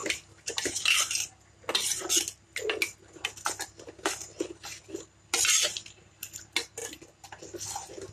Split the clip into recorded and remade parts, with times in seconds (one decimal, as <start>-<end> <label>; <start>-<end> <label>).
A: 0.0-8.1 recorded